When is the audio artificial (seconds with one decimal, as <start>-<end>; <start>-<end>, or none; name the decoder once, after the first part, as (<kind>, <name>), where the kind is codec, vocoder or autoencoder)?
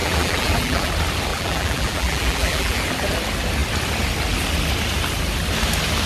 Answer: 0.0-0.9 (vocoder, BigVGAN v2); 1.3-2.8